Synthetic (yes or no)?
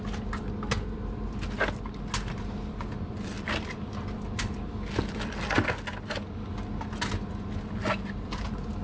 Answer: no